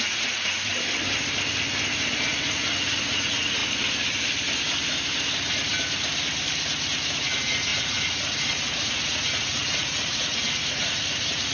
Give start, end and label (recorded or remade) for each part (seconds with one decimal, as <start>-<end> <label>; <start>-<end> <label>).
0.0-0.7 remade; 0.7-3.0 recorded; 3.0-3.6 remade; 3.6-7.2 recorded; 7.2-11.5 remade